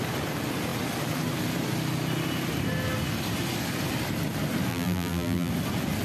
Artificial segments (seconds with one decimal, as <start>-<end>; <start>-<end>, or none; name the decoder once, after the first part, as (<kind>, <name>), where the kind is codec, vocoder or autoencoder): 4.7-5.5 (vocoder, BigVGAN v2)